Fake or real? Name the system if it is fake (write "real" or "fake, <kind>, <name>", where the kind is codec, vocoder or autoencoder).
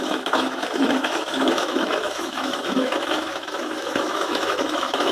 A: fake, autoencoder, DAC-VAE